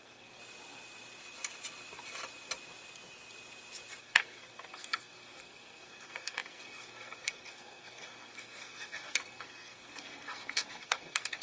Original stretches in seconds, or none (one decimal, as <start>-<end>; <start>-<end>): 0.4-4.0